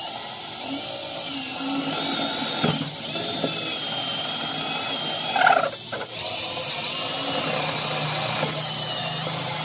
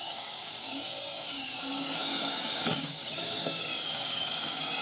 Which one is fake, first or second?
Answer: second